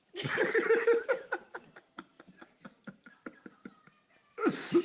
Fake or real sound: real